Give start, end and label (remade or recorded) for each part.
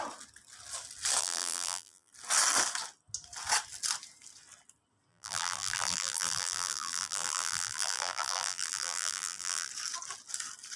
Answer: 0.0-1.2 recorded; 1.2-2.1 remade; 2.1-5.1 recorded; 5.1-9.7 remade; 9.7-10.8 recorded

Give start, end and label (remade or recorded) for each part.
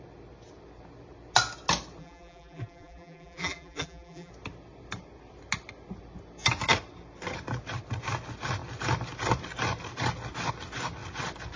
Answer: 0.0-2.0 recorded; 2.0-4.3 remade; 4.3-11.6 recorded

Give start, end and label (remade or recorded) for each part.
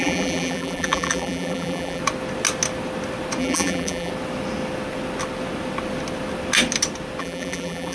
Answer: 0.0-2.0 remade; 2.0-3.4 recorded; 3.4-4.1 remade; 4.1-7.2 recorded; 7.2-7.9 remade